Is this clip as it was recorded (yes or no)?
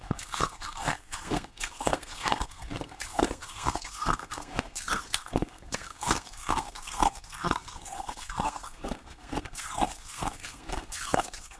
no